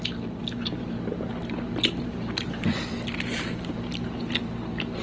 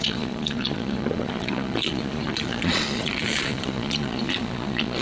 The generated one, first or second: second